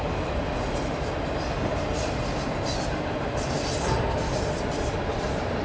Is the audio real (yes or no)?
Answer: yes